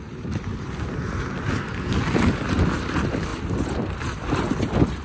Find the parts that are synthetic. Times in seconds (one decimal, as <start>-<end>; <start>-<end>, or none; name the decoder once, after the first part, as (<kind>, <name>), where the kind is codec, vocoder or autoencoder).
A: none